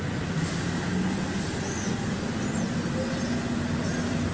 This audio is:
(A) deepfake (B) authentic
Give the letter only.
B